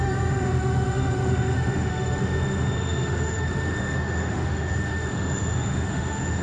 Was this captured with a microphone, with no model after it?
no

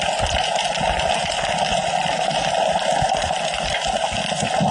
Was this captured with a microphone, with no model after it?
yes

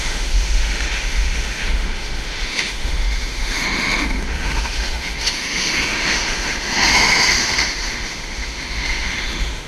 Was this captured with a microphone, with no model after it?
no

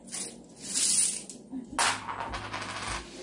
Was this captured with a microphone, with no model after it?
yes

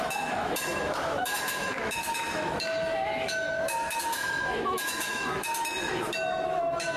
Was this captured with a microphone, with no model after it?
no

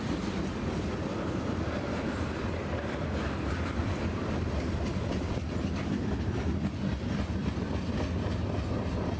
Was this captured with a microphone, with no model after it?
yes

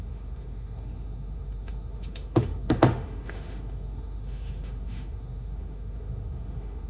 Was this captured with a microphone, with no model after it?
no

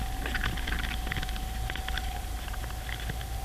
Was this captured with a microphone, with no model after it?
yes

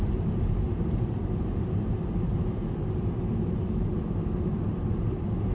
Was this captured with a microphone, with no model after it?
yes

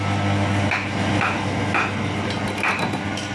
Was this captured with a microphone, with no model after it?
yes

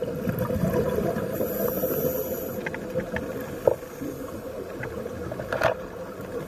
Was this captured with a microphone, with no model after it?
yes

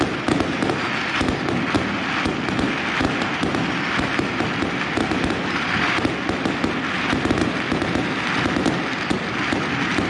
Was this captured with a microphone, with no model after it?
yes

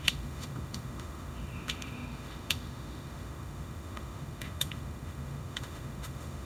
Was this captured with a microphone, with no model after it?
no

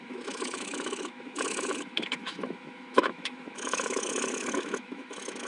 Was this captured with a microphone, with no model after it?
no